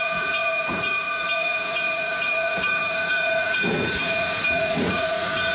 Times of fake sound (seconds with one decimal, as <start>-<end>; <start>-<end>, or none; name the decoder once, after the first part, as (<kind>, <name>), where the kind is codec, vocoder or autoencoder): 0.0-5.5 (vocoder, Vocos)